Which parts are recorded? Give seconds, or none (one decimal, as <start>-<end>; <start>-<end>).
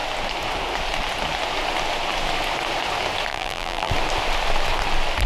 0.0-3.3; 3.9-5.3